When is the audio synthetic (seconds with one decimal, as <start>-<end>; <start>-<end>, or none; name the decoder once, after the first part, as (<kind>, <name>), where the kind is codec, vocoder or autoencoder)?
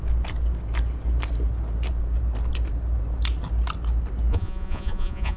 4.3-5.4 (vocoder, Vocos)